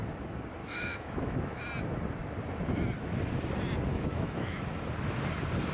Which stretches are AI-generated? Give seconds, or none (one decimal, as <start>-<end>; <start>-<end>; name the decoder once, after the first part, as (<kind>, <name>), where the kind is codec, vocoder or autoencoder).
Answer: 0.6-1.6 (autoencoder, DAC-VAE); 3.9-4.6